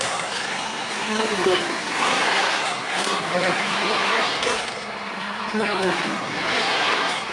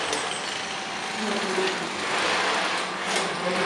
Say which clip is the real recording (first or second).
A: second